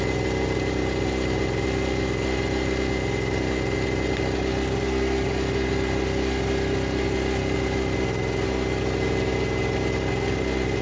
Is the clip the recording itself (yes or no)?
yes